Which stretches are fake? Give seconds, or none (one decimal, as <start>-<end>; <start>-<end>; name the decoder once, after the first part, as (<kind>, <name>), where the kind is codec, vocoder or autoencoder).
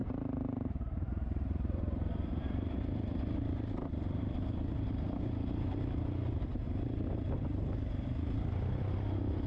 0.0-2.8 (vocoder, BigVGAN v2); 6.5-7.2